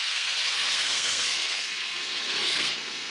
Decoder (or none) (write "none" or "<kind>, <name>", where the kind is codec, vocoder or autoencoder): codec, SNAC